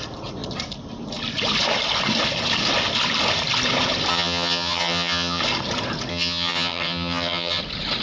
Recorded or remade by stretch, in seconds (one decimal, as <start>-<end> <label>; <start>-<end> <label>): 0.0-4.1 recorded; 4.1-5.4 remade; 5.4-6.1 recorded; 6.1-7.6 remade; 7.6-8.0 recorded